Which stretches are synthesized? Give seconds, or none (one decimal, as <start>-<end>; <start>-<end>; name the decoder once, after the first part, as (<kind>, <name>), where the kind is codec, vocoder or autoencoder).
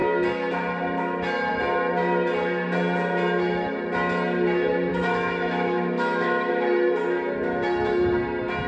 4.9-6.5 (autoencoder, DAC-VAE)